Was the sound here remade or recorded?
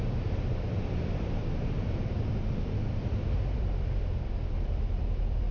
remade